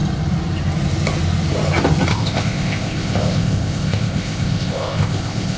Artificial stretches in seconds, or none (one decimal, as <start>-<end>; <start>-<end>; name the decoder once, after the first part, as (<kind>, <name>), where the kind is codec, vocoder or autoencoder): 2.1-5.6 (codec, ZipCodec)